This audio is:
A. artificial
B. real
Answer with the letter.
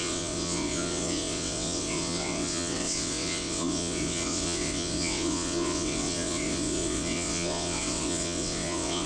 A